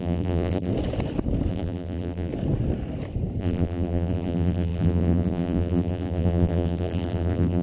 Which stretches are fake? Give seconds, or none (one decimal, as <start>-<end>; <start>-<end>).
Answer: 0.0-0.7; 1.5-2.3; 3.4-7.6